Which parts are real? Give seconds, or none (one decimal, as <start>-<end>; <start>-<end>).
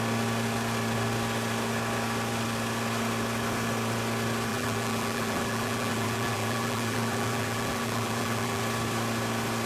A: 0.0-4.5; 8.6-9.7